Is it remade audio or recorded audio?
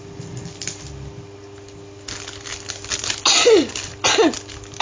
recorded